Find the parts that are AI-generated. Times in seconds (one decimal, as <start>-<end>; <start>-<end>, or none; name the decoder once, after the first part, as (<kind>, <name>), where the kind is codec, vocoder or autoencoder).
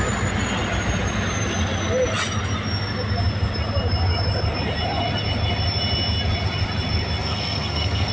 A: 7.2-8.1 (codec, SNAC)